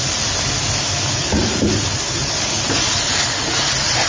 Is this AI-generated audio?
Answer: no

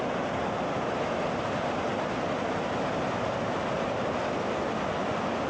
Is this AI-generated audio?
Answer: no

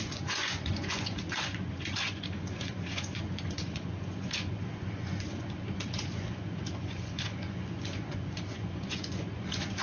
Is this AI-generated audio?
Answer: yes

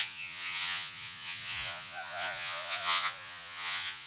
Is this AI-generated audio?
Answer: yes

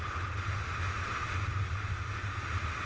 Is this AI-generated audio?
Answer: no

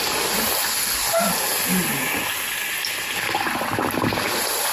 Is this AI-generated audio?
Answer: no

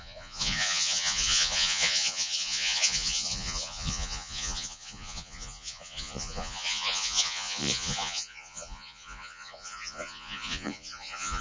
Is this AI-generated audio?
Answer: yes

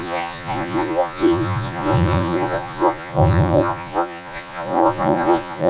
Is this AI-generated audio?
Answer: yes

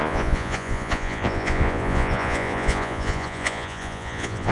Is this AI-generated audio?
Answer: yes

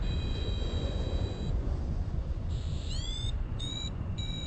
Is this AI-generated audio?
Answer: yes